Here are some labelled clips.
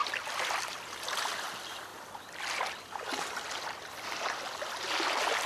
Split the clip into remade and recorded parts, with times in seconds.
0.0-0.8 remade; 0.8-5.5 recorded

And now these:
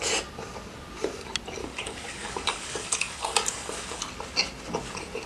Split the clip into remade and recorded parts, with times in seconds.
0.0-1.6 recorded; 1.6-4.0 remade; 4.0-5.3 recorded

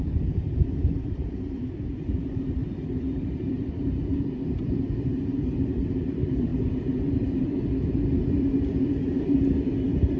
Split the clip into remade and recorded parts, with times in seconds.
0.0-10.2 remade

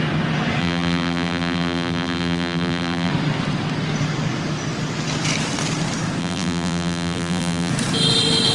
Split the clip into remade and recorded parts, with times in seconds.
0.0-0.6 recorded; 0.6-3.1 remade; 3.1-6.2 recorded; 6.2-7.7 remade; 7.7-8.5 recorded

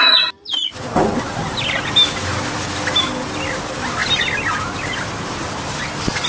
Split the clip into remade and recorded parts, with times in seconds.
0.0-6.3 recorded

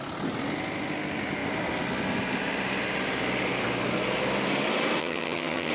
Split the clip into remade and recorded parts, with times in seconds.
0.0-5.0 recorded; 5.0-5.7 remade

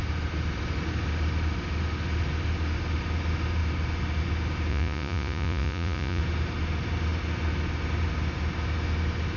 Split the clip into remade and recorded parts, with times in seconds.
0.0-4.7 recorded; 4.7-6.2 remade; 6.2-9.4 recorded